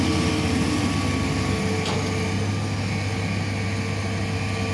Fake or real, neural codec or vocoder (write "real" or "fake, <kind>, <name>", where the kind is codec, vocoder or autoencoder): real